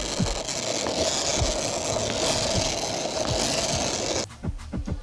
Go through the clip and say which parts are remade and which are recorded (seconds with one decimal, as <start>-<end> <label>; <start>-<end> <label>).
0.0-5.0 recorded